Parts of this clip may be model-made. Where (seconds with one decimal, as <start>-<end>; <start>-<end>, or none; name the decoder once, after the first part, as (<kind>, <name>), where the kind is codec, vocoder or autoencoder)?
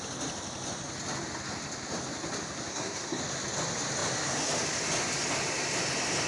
2.7-3.2 (codec, SNAC)